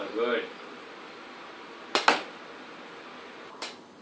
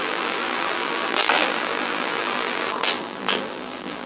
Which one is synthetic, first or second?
second